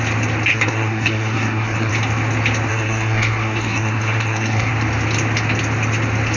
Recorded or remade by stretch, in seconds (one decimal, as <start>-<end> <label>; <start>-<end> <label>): 0.0-0.5 recorded; 0.5-1.9 remade; 1.9-2.7 recorded; 2.7-4.7 remade; 4.7-6.4 recorded